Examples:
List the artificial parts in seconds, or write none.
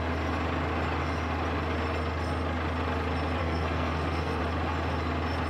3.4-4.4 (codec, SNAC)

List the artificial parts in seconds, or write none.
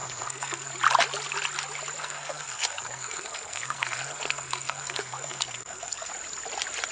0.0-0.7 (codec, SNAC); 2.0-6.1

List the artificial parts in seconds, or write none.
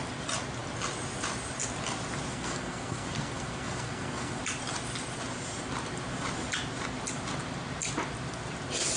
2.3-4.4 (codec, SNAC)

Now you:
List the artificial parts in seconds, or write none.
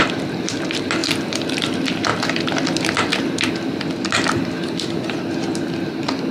none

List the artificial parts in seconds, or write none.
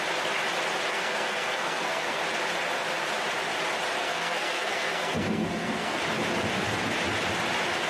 0.9-2.2 (codec, SNAC); 4.0-6.0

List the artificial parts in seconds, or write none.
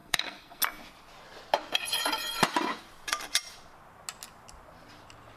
0.0-0.6 (codec, SNAC)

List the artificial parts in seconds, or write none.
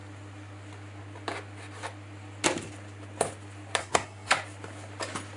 3.8-4.3 (codec, SNAC)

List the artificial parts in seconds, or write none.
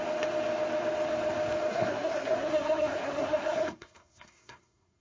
1.7-5.0 (codec, SNAC)